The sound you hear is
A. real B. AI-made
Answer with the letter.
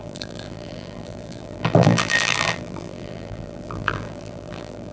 B